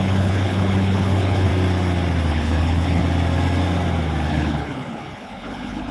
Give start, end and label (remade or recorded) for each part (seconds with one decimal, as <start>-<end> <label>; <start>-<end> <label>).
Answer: 0.0-1.5 remade; 1.5-2.3 recorded; 2.3-3.0 remade; 3.0-4.3 recorded; 4.3-5.9 remade